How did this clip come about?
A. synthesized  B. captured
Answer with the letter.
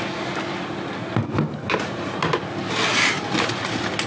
B